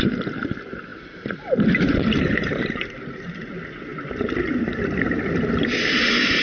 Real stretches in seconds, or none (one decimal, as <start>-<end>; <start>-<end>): 0.0-0.9; 3.5-6.4